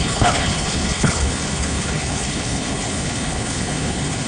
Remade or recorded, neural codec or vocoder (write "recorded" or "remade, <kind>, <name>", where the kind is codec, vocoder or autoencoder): remade, codec, HILCodec